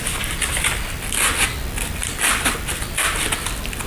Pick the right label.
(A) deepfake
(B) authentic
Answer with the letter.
B